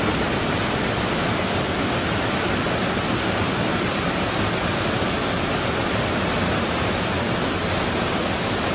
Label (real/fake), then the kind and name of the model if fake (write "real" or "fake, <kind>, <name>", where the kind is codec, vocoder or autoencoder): real